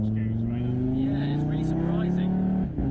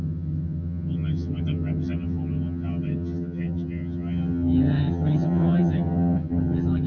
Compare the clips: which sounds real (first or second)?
first